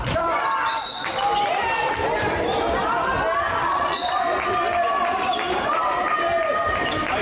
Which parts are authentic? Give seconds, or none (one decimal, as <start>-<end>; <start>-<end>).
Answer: 0.0-3.6; 4.1-7.2